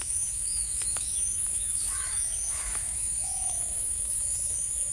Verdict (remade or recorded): remade